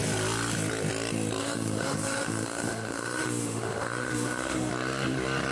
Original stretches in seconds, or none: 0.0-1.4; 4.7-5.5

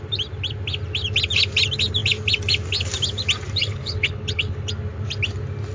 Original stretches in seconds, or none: 0.0-3.6; 4.7-5.7

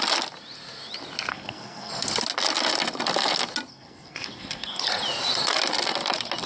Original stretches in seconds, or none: 0.0-1.3; 1.9-3.7; 4.8-6.5